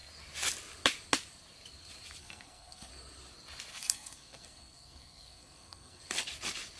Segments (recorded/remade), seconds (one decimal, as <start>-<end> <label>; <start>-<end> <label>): 0.0-2.2 recorded; 2.2-2.9 remade; 2.9-3.7 recorded; 3.7-6.0 remade; 6.0-6.8 recorded